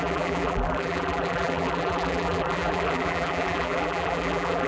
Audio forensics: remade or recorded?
remade